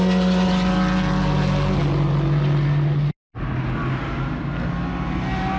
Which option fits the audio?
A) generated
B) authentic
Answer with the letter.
B